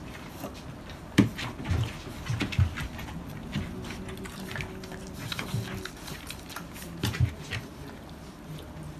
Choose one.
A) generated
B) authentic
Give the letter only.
B